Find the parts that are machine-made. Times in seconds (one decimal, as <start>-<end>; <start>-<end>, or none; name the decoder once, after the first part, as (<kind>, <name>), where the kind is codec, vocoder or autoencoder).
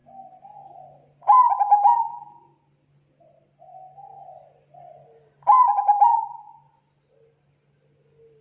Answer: none